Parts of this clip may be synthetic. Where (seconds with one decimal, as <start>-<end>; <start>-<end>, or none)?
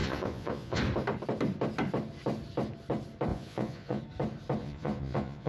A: 0.0-0.8; 3.3-4.0; 4.6-5.5